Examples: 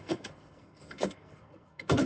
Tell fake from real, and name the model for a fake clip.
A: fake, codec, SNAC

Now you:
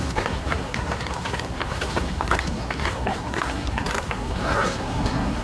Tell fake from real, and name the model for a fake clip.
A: fake, codec, SNAC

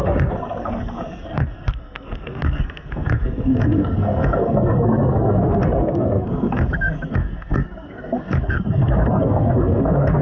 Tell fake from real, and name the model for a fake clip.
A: fake, codec, SNAC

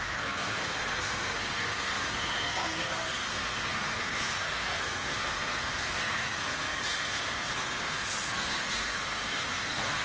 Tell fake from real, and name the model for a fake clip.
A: fake, codec, SNAC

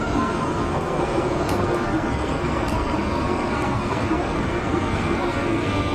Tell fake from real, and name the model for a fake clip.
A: fake, codec, SNAC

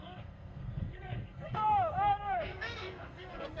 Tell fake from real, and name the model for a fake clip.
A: fake, codec, SNAC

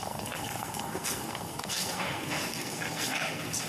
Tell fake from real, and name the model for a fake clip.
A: fake, codec, SNAC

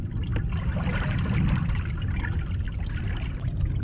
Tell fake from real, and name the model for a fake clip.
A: real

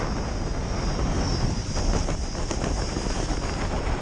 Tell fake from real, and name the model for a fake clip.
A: real